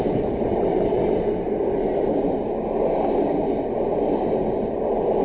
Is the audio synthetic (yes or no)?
no